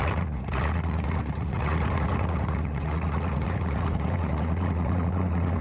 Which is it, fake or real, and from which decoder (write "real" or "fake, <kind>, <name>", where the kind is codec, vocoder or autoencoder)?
fake, vocoder, Vocos